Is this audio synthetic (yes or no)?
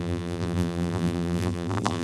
yes